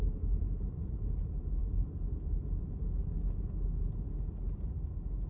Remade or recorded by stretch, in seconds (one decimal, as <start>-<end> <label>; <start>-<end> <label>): 0.0-5.3 recorded